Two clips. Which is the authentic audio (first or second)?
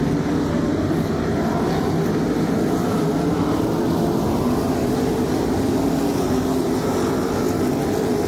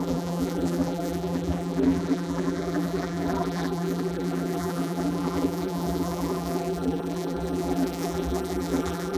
first